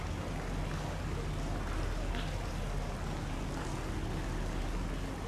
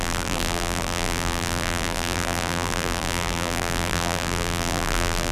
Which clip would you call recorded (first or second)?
first